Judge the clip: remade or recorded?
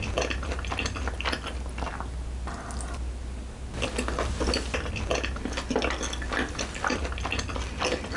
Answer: recorded